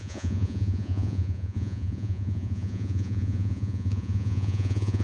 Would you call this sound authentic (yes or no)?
no